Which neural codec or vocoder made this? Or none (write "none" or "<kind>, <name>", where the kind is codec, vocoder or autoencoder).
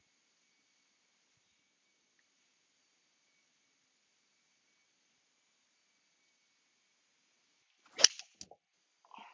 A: none